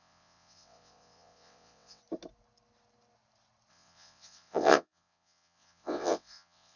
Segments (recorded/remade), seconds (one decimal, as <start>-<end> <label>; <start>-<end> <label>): 0.0-2.0 remade; 2.0-3.7 recorded; 3.7-6.8 remade